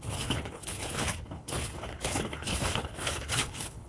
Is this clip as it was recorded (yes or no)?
no